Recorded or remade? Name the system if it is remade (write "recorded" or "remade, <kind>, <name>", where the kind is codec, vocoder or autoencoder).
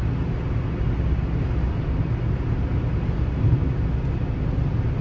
recorded